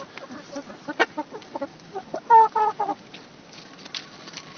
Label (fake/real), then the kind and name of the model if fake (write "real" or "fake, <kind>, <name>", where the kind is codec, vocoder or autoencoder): fake, vocoder, BigVGAN v2